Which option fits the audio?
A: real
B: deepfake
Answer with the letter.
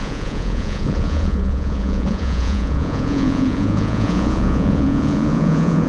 B